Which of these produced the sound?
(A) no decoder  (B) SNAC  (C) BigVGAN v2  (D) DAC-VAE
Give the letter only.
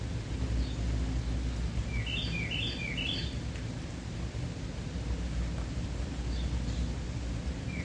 A